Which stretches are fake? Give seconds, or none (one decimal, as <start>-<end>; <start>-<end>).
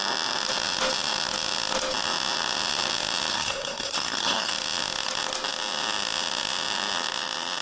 3.3-4.5